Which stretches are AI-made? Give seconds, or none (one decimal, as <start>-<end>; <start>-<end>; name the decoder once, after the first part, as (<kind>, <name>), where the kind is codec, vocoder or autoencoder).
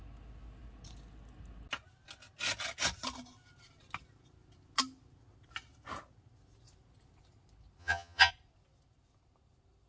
7.8-8.3 (vocoder, HiFi-GAN)